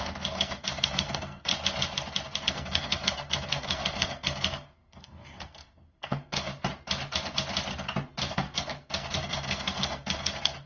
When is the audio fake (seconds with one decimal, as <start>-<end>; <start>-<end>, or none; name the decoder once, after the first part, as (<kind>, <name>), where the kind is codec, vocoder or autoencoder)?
0.0-1.5 (codec, SNAC); 2.4-6.5; 8.3-10.7